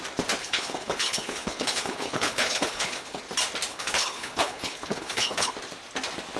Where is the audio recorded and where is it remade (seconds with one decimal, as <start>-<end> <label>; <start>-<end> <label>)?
0.0-0.4 recorded; 0.4-3.2 remade; 3.2-3.7 recorded; 3.7-5.5 remade; 5.5-6.4 recorded